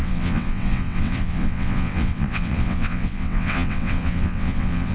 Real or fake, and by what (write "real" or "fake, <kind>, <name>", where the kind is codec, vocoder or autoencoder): fake, vocoder, WaveNeXt